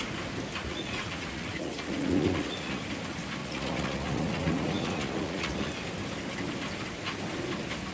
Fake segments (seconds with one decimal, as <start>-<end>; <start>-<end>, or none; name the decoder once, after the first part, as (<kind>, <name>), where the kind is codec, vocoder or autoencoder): 0.6-2.8 (vocoder, Vocos); 3.4-5.7